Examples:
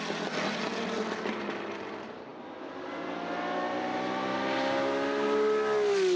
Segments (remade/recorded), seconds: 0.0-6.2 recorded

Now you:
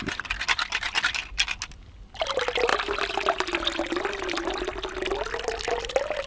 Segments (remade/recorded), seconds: 0.0-6.3 recorded

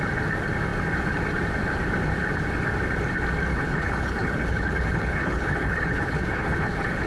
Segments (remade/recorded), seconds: 0.0-3.5 recorded; 3.5-7.1 remade

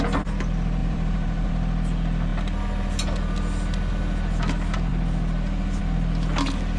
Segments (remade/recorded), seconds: 0.0-0.8 recorded; 0.8-1.5 remade; 1.5-6.8 recorded

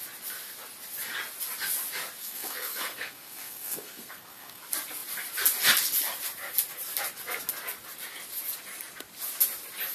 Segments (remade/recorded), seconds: 0.0-2.2 recorded; 2.2-4.6 remade; 4.6-9.9 recorded

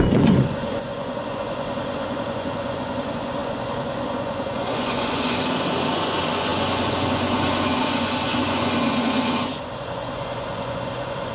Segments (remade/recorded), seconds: 0.0-11.3 remade

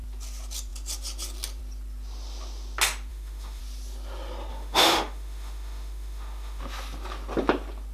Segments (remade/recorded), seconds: 0.0-3.1 recorded; 3.1-3.6 remade; 3.6-4.5 recorded; 4.5-6.6 remade; 6.6-7.9 recorded